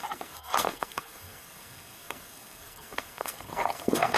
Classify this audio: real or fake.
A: fake